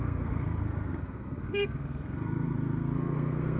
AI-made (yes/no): yes